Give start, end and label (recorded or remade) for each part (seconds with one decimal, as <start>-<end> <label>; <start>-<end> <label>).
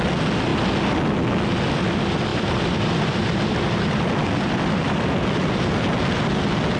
0.0-2.3 recorded; 2.3-5.8 remade; 5.8-6.8 recorded